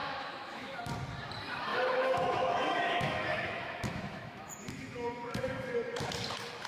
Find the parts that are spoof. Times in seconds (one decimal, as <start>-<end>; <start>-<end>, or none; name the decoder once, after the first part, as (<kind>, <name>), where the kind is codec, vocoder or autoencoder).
0.0-0.8 (autoencoder, DAC-VAE); 1.7-5.7